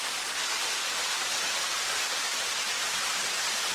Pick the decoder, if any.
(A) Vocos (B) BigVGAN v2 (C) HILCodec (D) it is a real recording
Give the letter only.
D